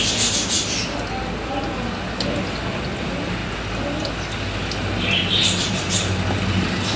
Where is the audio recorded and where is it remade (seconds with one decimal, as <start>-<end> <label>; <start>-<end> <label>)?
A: 0.0-7.0 recorded